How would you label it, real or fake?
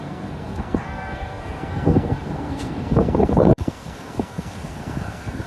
fake